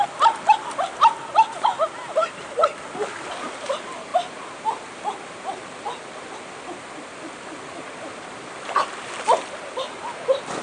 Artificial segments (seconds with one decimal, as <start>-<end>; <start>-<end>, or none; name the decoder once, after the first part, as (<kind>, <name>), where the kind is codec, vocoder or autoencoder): none